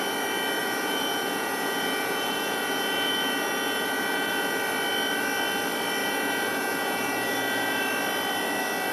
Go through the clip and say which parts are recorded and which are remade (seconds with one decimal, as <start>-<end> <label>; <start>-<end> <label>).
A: 0.0-0.6 recorded; 0.6-4.6 remade; 4.6-6.0 recorded; 6.0-7.8 remade; 7.8-8.9 recorded